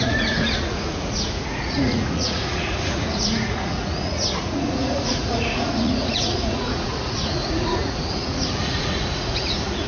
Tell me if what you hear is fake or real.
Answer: fake